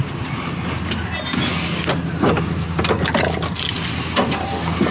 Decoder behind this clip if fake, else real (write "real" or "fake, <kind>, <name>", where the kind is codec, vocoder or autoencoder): real